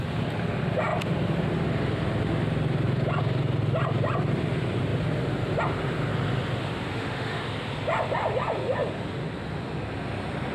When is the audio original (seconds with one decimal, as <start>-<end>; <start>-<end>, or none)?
0.0-6.9; 7.4-10.5

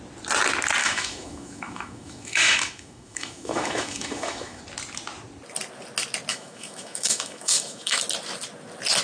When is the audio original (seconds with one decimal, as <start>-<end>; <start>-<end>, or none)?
0.0-0.8; 4.6-6.3; 8.0-9.0

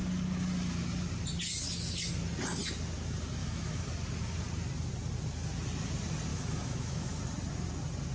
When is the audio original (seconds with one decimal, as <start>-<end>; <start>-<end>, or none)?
0.0-3.4; 3.9-6.3; 7.2-8.1

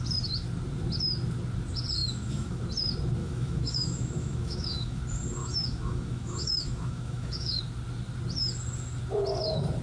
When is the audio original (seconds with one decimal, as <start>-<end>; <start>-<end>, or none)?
0.0-2.0; 2.6-3.2; 5.0-5.4; 7.6-9.8

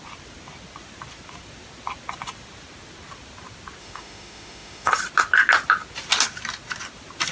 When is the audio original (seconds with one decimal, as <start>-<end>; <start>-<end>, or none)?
0.0-3.8; 4.9-7.3

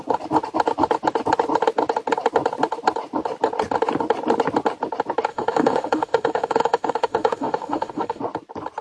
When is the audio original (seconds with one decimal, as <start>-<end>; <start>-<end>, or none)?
0.0-5.3; 8.2-8.8

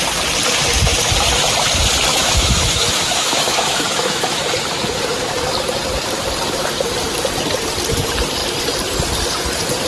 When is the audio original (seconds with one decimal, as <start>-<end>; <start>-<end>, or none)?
0.0-2.1; 4.4-9.9